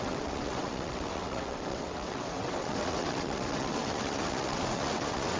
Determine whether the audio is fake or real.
fake